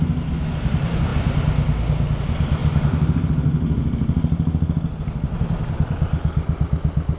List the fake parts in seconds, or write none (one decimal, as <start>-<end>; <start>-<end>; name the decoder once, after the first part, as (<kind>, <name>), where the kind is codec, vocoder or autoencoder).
none